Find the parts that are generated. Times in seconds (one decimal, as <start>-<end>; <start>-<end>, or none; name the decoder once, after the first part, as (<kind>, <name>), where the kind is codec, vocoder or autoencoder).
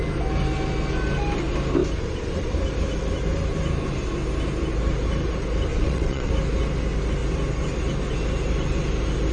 5.7-6.3 (vocoder, WaveNeXt)